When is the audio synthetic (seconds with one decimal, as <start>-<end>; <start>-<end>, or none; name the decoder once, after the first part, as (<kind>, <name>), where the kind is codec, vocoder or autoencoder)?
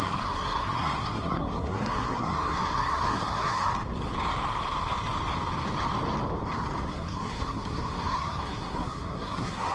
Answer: 0.0-3.7 (codec, SNAC); 6.9-9.7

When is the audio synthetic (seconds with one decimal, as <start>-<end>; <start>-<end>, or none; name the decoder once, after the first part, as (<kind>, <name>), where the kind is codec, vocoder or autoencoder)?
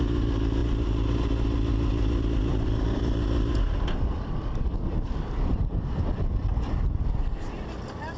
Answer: none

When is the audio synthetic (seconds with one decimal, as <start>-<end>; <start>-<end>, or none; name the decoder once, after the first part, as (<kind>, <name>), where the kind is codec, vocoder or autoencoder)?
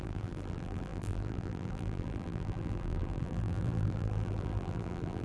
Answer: 0.0-5.2 (vocoder, BigVGAN v2)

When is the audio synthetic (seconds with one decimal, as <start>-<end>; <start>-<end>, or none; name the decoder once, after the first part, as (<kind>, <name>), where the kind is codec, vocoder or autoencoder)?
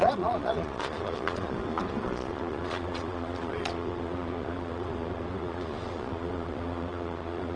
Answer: 0.0-7.6 (vocoder, Vocos)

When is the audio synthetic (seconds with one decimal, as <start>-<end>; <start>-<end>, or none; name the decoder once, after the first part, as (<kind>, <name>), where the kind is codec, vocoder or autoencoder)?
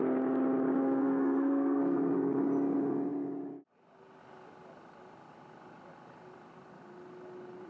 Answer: 0.8-2.3 (codec, SNAC)